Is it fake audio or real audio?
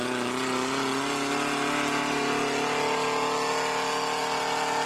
real